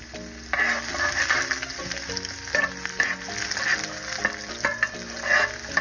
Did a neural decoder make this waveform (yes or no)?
no